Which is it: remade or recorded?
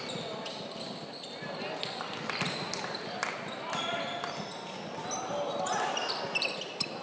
recorded